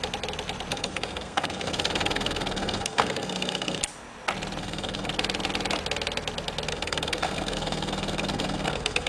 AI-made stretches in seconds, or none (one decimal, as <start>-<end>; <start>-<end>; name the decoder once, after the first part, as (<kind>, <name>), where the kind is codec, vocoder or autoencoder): 0.7-3.8 (codec, SNAC); 4.6-5.1; 6.7-9.1